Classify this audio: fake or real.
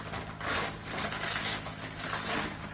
real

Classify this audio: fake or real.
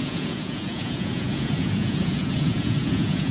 fake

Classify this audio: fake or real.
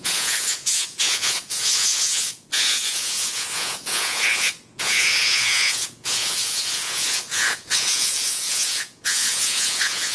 fake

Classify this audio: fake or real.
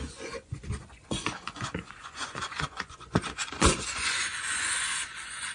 fake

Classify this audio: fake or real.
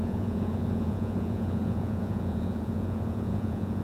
fake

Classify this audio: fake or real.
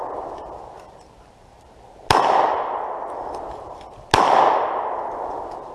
real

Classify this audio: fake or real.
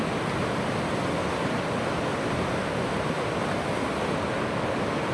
real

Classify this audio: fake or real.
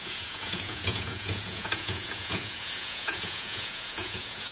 fake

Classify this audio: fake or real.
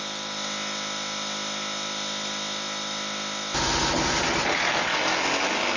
real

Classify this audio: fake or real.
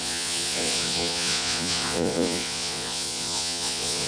fake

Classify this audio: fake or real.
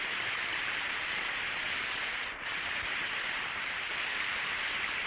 real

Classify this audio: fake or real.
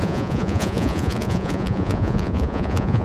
fake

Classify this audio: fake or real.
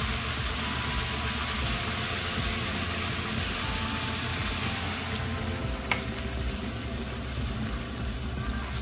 real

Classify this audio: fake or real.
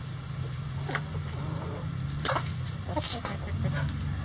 real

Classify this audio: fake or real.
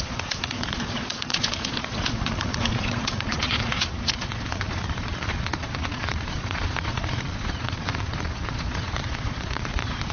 fake